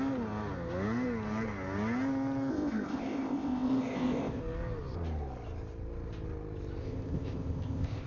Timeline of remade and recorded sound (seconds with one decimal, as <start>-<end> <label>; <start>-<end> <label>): 0.0-2.5 recorded; 2.5-4.4 remade; 4.4-6.8 recorded; 6.8-8.1 remade